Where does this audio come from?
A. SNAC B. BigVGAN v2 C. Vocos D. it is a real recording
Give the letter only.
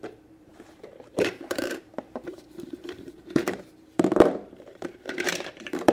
B